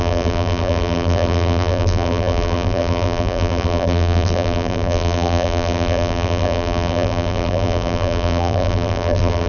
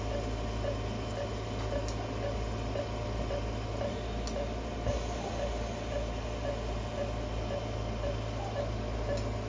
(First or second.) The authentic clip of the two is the second